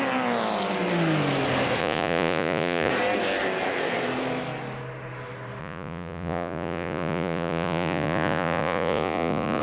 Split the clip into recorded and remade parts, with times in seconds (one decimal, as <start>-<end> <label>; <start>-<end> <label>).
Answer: 0.0-1.8 recorded; 1.8-2.9 remade; 2.9-5.6 recorded; 5.6-9.6 remade